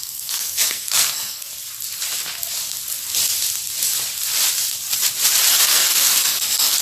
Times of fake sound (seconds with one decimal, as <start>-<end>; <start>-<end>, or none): 0.0-1.5; 5.5-6.8